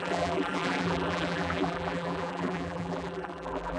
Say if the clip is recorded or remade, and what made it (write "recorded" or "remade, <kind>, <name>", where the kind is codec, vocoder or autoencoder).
remade, vocoder, BigVGAN v2